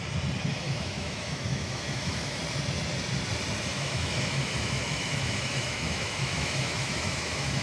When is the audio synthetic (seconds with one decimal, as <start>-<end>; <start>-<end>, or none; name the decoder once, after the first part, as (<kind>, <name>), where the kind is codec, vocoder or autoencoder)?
0.5-2.4 (autoencoder, DAC-VAE); 3.7-7.6